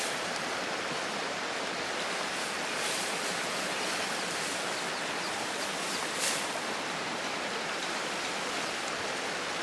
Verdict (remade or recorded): recorded